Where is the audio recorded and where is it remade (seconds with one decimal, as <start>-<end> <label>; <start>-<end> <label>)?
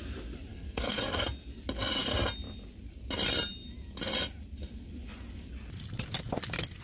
0.0-0.5 recorded; 0.5-1.0 remade; 1.0-6.8 recorded